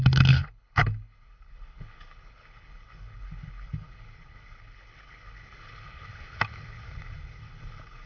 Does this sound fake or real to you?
fake